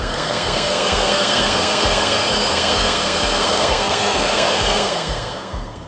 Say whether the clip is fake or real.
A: fake